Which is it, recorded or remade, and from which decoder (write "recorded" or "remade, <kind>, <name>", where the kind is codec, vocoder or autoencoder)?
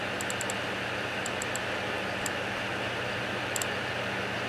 recorded